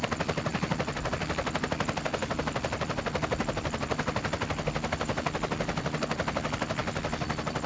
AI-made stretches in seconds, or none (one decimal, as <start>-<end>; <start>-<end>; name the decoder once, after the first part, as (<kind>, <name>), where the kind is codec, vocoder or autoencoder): 0.5-1.1 (vocoder, BigVGAN v2)